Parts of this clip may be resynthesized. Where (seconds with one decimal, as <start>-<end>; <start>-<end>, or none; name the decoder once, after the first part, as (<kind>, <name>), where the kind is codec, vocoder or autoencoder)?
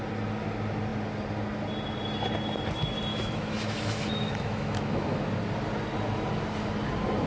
3.1-5.2 (autoencoder, DAC-VAE)